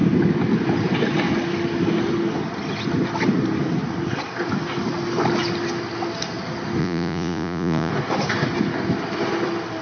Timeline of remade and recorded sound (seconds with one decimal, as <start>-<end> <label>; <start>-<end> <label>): 0.0-6.8 recorded; 6.8-7.9 remade; 7.9-9.8 recorded